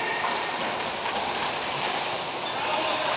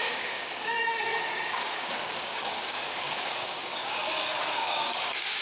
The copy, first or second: second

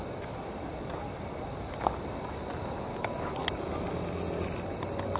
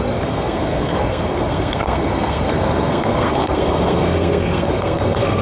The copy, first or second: second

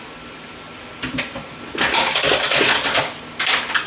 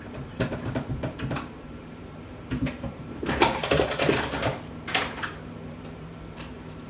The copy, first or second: second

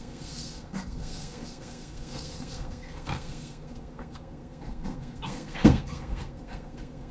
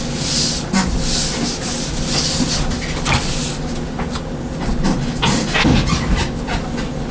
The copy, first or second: first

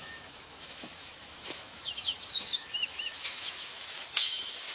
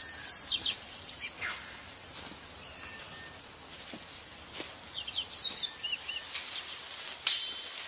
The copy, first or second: first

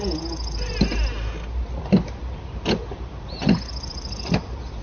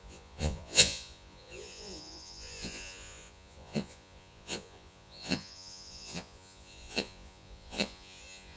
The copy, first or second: second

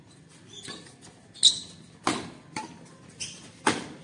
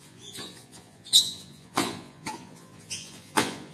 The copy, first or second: second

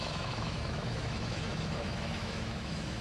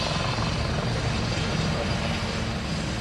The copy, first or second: first